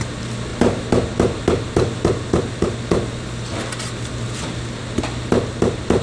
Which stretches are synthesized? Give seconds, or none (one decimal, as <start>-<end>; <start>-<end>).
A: none